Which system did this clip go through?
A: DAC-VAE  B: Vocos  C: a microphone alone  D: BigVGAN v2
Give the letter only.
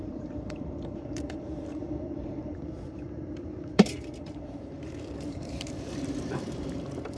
D